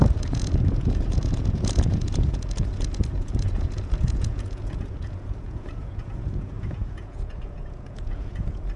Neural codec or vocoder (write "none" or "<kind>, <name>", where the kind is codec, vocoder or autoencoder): vocoder, Vocos